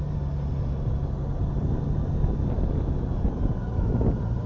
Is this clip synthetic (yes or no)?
no